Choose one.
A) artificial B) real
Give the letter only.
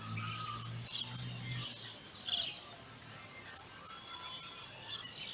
B